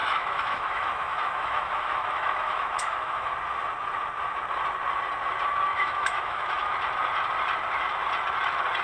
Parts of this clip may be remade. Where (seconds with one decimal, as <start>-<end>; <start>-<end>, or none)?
0.0-3.3; 5.7-6.7